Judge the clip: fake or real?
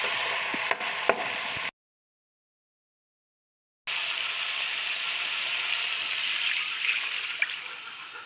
real